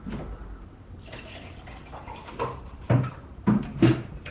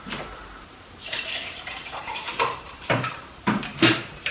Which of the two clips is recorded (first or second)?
first